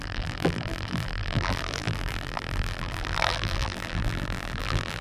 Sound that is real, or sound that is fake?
fake